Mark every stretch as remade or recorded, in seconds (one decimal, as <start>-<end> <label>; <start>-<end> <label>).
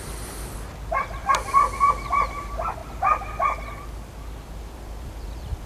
0.0-5.7 recorded